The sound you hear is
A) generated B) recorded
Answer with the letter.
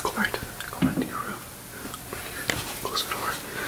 B